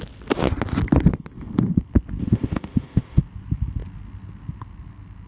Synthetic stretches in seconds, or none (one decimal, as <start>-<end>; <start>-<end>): 2.2-3.2